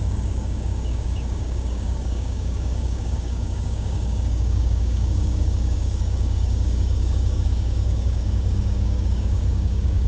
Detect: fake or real fake